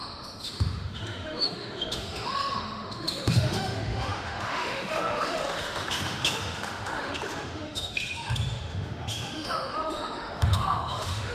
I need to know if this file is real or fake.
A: fake